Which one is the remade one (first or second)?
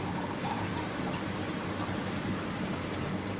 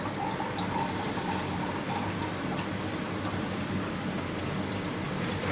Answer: first